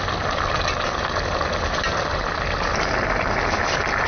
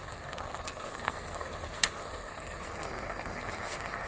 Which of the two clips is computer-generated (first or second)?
second